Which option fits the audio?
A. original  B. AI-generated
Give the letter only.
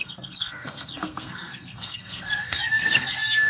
B